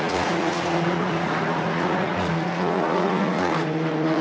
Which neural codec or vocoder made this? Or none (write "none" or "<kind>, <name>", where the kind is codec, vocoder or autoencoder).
vocoder, Vocos